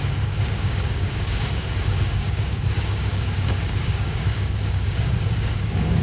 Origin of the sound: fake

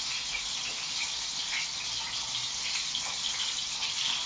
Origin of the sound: real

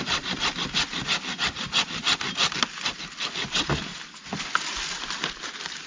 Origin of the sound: real